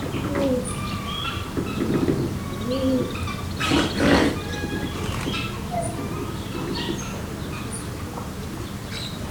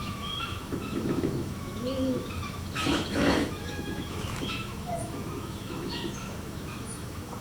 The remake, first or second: second